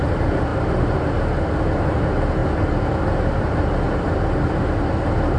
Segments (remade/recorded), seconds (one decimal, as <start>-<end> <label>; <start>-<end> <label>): 0.0-5.4 recorded